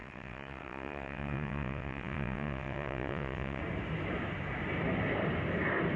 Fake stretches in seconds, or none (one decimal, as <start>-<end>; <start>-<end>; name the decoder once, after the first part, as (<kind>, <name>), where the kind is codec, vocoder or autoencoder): 0.0-3.6 (vocoder, WaveNeXt)